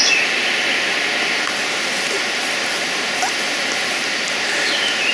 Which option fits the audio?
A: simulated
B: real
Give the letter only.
B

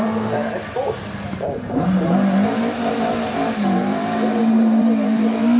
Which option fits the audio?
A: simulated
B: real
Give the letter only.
A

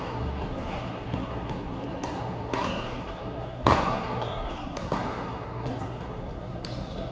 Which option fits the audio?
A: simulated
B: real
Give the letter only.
A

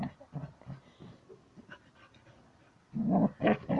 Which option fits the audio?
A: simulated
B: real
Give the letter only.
B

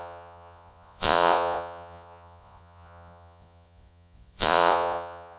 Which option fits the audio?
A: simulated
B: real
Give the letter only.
A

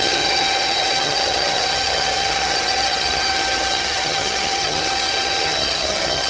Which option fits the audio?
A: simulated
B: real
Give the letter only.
A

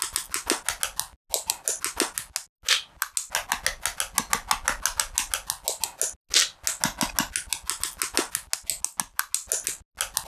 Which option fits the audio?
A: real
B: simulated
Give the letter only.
A